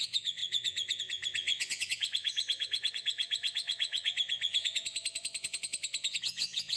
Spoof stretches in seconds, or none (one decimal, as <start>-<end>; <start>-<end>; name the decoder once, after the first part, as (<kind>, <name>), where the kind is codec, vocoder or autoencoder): 0.0-6.8 (vocoder, Vocos)